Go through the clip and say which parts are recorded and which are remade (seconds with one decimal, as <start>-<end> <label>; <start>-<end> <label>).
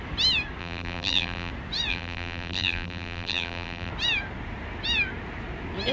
0.0-0.6 recorded; 0.6-1.5 remade; 1.5-1.9 recorded; 1.9-3.9 remade; 3.9-5.9 recorded